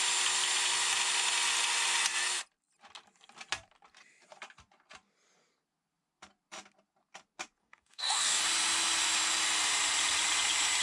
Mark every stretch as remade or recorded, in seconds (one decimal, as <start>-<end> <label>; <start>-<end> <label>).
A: 0.0-7.6 recorded; 7.6-8.4 remade; 8.4-10.8 recorded